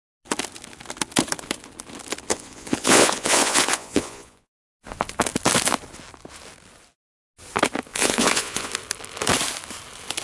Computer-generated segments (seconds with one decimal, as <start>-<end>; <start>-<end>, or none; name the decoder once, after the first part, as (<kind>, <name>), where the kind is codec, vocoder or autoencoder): 2.3-4.5 (vocoder, Vocos); 7.9-8.7